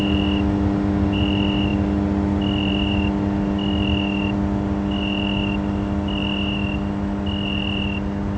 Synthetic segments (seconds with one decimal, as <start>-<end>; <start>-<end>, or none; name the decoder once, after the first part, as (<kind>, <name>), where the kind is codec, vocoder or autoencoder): none